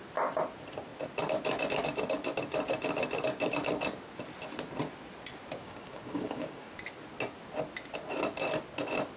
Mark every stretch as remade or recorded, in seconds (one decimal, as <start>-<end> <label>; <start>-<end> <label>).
0.0-5.6 recorded; 5.6-6.7 remade; 6.7-9.2 recorded